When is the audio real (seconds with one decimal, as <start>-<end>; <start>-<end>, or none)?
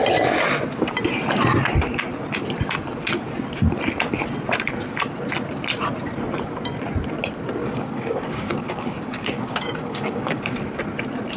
0.0-7.6; 10.4-11.4